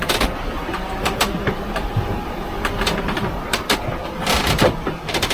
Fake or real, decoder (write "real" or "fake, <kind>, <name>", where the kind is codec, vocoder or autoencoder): fake, vocoder, BigVGAN v2